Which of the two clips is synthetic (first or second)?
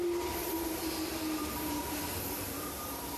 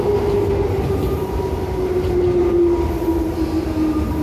first